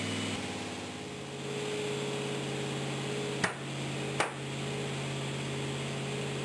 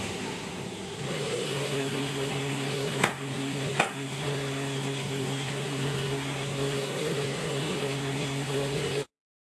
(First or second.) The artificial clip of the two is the second